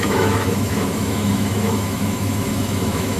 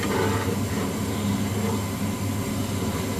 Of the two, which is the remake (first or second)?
first